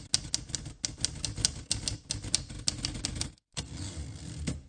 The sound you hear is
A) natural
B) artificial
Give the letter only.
A